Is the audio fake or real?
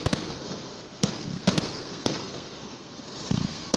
fake